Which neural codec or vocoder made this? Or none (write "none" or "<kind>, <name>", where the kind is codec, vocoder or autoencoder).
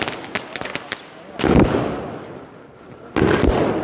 none